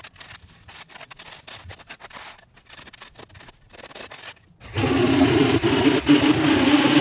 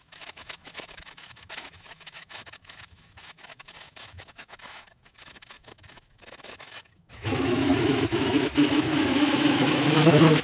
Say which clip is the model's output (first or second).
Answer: second